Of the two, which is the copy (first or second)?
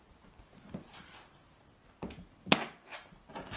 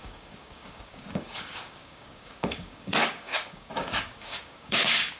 second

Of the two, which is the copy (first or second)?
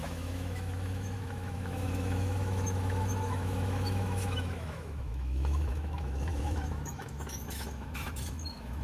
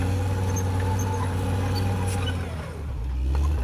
first